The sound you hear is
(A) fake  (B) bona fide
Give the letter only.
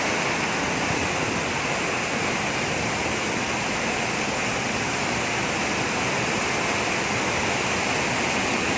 B